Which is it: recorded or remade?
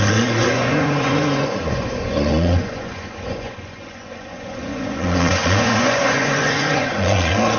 remade